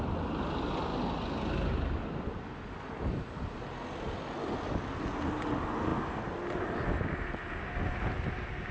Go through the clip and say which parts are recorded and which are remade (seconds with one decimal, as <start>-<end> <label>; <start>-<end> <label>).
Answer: 0.0-8.7 recorded